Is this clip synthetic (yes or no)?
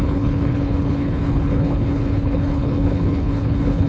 yes